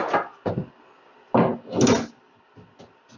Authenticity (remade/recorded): recorded